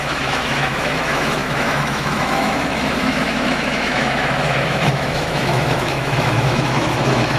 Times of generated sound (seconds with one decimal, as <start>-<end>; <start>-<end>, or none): 0.0-7.4